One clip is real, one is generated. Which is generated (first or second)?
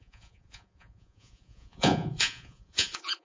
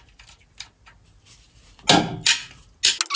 first